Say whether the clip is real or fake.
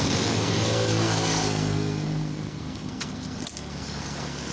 fake